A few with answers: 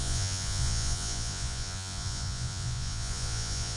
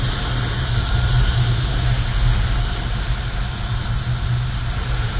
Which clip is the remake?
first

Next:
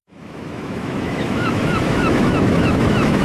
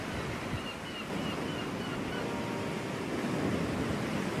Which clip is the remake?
first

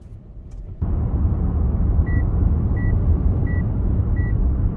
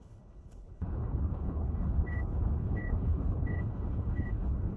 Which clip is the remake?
second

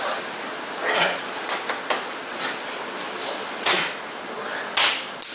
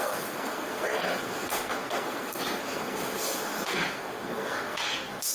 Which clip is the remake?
second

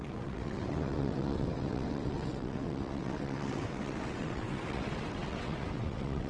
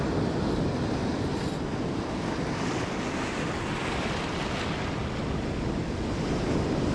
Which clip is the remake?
first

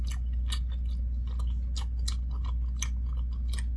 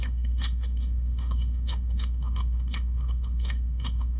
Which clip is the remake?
second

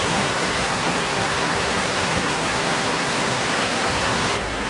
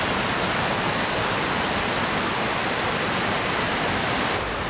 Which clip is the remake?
first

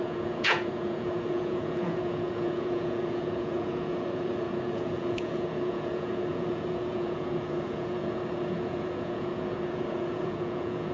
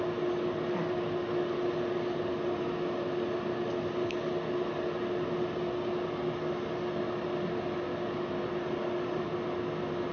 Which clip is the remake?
first